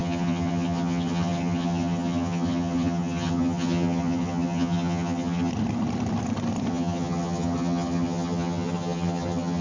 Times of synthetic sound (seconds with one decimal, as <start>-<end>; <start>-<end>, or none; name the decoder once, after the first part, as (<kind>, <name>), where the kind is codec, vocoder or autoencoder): 0.0-5.5 (vocoder, HiFi-GAN); 6.7-9.6